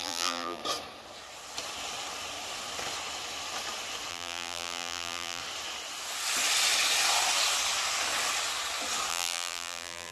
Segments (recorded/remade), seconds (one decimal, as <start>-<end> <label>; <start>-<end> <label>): 0.0-0.6 remade; 0.6-4.1 recorded; 4.1-5.4 remade; 5.4-9.1 recorded; 9.1-10.1 remade